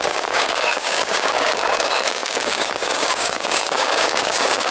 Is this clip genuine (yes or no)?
no